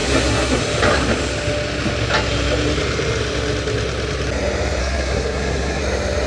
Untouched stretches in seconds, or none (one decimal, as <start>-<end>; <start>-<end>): 0.6-4.8; 5.8-6.3